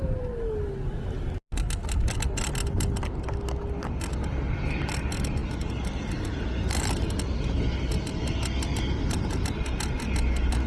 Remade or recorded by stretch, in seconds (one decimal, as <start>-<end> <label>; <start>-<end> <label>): 0.0-10.7 recorded